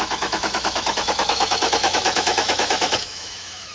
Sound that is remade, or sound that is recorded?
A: remade